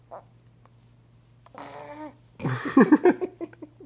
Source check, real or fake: real